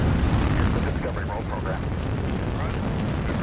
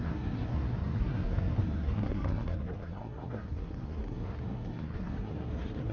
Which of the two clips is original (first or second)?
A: first